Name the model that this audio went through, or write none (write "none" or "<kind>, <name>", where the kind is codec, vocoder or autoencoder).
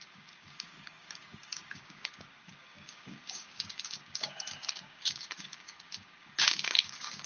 codec, DAC